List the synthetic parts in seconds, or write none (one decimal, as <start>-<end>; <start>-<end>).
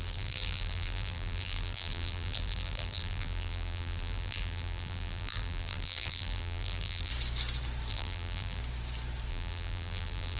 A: 0.0-7.1; 7.9-8.6; 9.3-10.4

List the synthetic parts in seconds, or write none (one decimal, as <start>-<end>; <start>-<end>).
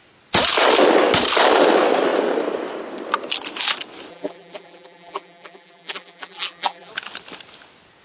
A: 4.1-6.9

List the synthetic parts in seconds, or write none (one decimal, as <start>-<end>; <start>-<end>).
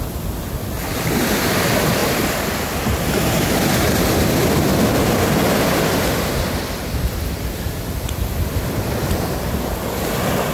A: 0.0-4.7; 6.4-10.5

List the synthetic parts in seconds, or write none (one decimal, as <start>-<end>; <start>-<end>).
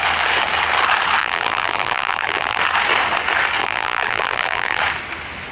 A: 1.2-2.6; 3.6-4.8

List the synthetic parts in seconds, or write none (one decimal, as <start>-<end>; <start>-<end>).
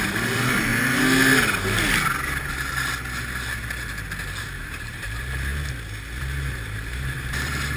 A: 0.0-0.7; 4.4-5.5; 6.2-7.8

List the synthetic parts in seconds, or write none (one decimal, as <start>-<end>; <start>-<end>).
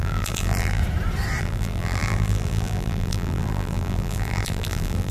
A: 0.0-0.8; 1.4-5.1